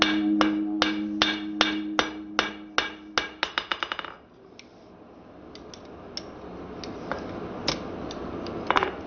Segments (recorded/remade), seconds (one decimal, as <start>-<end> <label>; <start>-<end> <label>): 0.0-9.1 recorded

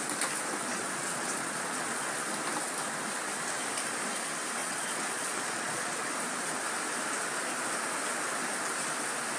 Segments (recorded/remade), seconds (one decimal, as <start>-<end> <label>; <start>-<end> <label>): 0.0-0.7 recorded; 0.7-2.0 remade; 2.0-4.6 recorded; 4.6-6.1 remade; 6.1-9.4 recorded

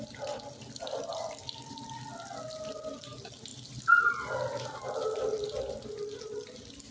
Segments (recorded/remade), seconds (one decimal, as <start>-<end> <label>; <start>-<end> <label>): 0.0-6.9 recorded

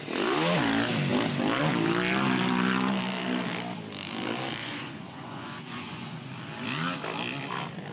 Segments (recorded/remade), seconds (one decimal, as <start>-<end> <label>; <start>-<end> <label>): 0.0-4.6 recorded; 4.6-6.3 remade; 6.3-7.9 recorded